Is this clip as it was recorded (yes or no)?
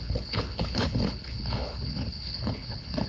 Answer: no